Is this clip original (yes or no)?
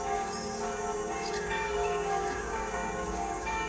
no